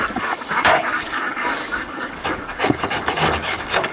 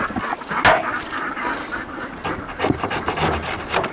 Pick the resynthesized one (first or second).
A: first